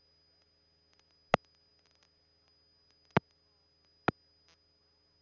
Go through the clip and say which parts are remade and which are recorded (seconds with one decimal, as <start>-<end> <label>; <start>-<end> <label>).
0.0-5.2 recorded